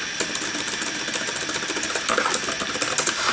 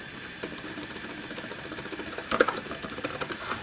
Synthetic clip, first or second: second